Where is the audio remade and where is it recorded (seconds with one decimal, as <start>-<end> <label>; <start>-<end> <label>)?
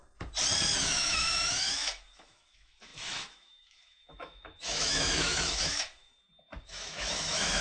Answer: 0.0-0.8 recorded; 0.8-6.1 remade; 6.1-6.6 recorded; 6.6-7.6 remade